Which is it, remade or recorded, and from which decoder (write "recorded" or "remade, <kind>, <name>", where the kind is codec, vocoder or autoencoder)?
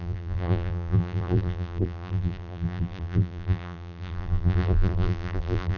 remade, vocoder, BigVGAN v2